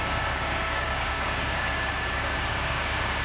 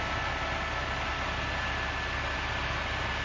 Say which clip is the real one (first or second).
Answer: second